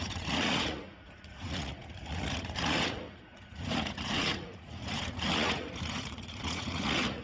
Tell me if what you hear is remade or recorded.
remade